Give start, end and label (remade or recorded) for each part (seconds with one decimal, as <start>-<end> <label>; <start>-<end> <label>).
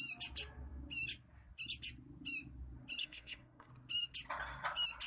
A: 0.0-3.0 recorded; 3.0-3.7 remade; 3.7-5.1 recorded